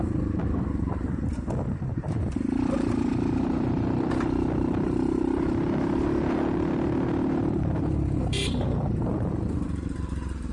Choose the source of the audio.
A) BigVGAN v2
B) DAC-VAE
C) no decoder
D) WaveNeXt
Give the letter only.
A